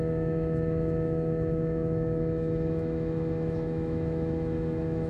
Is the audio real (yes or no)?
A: no